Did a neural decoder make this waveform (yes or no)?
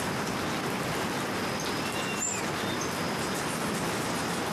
no